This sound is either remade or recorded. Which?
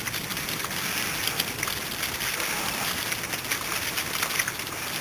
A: recorded